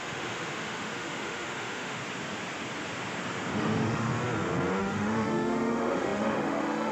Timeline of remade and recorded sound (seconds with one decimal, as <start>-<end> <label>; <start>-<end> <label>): 0.0-2.0 remade; 2.0-3.5 recorded; 3.5-4.1 remade; 4.1-4.8 recorded; 4.8-6.9 remade